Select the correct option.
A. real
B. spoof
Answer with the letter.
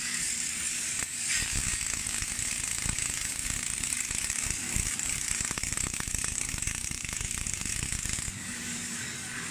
B